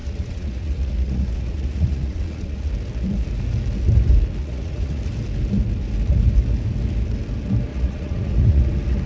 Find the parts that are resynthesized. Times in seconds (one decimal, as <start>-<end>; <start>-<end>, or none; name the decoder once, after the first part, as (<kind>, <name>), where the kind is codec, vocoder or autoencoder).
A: 0.0-2.7 (vocoder, Vocos); 4.4-5.0; 7.7-8.6